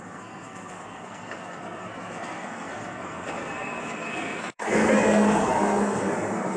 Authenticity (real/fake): fake